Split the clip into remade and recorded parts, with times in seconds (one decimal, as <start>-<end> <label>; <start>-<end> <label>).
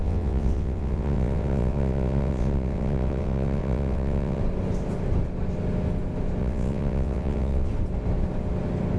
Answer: 0.0-4.4 remade; 4.4-6.4 recorded; 6.4-7.7 remade; 7.7-9.0 recorded